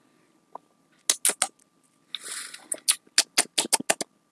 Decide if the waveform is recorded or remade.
recorded